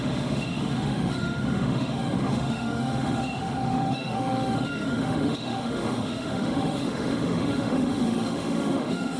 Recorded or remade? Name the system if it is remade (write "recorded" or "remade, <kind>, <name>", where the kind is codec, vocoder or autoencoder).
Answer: remade, autoencoder, DAC-VAE